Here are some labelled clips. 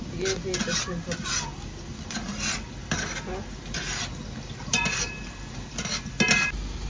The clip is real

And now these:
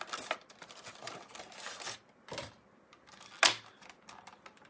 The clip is real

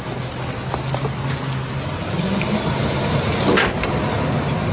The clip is real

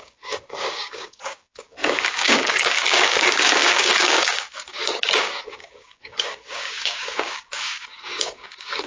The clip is fake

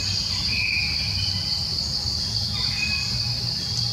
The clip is real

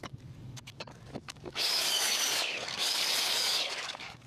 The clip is fake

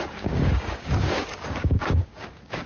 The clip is fake